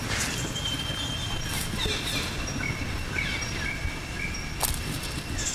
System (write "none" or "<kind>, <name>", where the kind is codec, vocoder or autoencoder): none